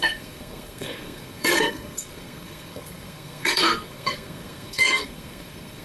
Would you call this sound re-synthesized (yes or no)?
yes